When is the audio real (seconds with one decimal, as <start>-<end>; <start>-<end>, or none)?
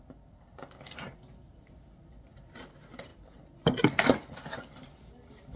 0.0-5.6